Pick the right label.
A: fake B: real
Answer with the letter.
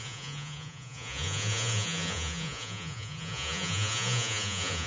A